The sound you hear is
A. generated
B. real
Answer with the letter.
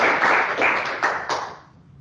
B